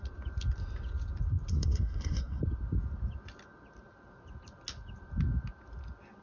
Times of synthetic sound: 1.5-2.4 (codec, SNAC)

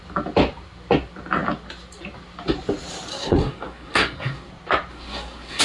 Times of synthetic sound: 3.1-4.5 (codec, SNAC); 4.9-5.6

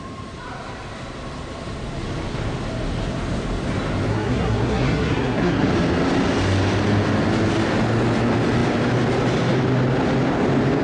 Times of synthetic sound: 4.1-5.7 (codec, SNAC)

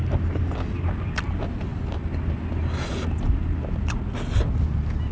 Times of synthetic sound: none

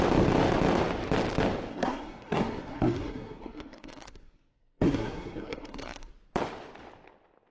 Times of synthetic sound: 1.7-6.1 (codec, SNAC)

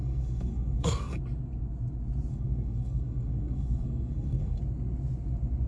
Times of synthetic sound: 0.0-1.2 (codec, SNAC); 2.3-4.6